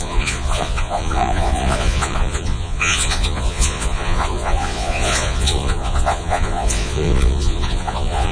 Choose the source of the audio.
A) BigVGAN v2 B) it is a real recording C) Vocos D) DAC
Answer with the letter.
C